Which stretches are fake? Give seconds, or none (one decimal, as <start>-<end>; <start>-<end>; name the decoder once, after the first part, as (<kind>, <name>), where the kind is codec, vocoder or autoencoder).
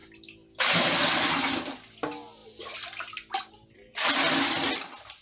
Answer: none